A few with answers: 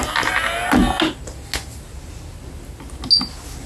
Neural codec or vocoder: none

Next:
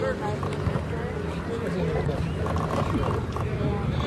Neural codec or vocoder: none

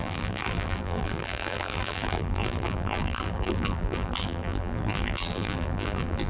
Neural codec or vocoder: vocoder, BigVGAN v2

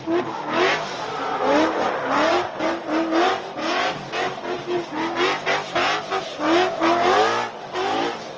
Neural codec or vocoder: none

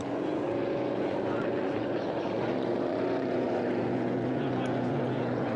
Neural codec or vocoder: vocoder, Vocos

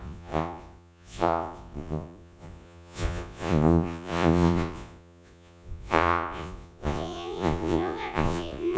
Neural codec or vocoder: vocoder, Vocos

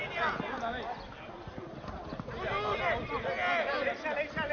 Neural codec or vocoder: none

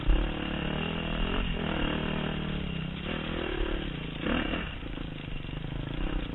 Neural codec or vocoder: none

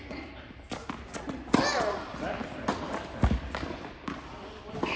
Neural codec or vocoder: none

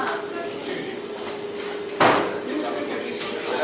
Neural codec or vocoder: none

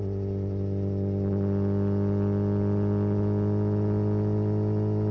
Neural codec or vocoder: none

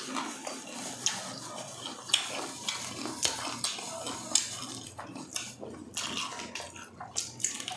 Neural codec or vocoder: none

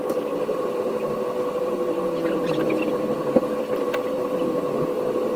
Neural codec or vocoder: vocoder, BigVGAN v2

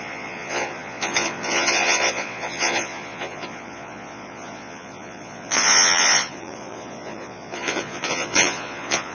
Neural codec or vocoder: vocoder, Vocos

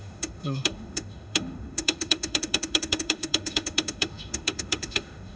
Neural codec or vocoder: autoencoder, DAC-VAE